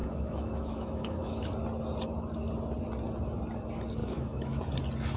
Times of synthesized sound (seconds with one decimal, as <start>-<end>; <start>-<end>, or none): 0.0-1.5; 4.0-4.6